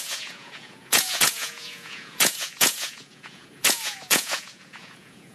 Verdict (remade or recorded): remade